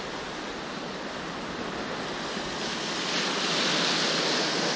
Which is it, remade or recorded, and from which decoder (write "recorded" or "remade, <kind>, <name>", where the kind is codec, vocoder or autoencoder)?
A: recorded